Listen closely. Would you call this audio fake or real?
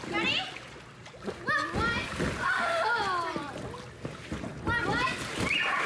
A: real